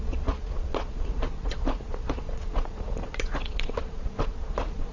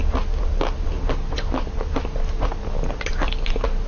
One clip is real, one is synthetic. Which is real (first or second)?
second